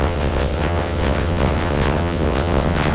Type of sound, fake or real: fake